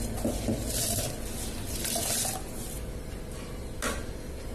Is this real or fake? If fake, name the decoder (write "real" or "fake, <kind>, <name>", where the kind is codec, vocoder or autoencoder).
real